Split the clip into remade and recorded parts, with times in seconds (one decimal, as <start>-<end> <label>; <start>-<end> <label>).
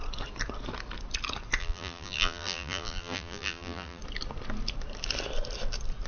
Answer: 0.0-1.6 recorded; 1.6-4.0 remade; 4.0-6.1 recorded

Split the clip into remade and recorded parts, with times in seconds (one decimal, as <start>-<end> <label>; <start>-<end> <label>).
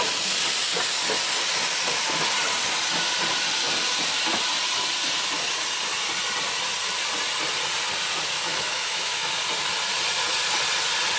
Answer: 0.0-8.5 recorded; 8.5-9.3 remade; 9.3-11.2 recorded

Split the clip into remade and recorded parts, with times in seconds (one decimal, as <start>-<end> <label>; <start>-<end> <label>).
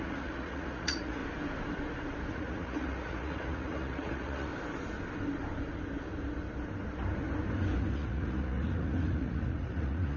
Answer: 0.0-1.2 remade; 1.2-2.3 recorded; 2.3-4.5 remade; 4.5-7.9 recorded; 7.9-10.2 remade